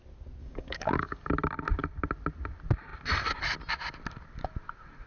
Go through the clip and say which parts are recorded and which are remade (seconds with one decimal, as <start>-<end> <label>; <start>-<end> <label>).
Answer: 0.0-0.4 recorded; 0.4-1.3 remade; 1.3-5.1 recorded